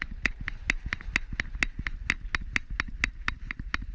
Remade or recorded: recorded